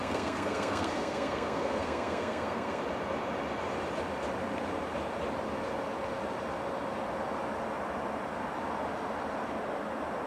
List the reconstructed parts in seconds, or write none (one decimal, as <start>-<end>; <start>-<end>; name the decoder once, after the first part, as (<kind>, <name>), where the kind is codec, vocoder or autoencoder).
0.0-2.8 (codec, SNAC)